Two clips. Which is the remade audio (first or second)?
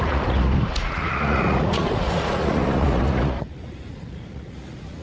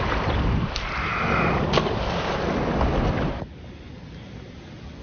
first